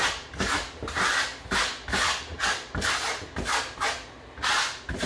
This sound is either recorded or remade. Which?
recorded